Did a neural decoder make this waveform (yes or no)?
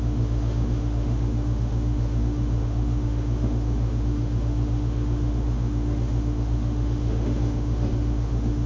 yes